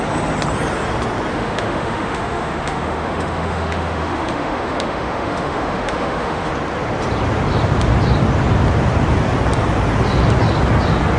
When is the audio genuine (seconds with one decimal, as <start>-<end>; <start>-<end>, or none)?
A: 0.0-1.3; 6.5-11.2